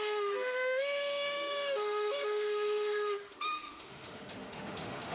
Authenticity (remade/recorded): remade